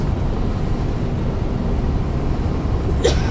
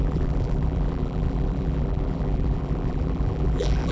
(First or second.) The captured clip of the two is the first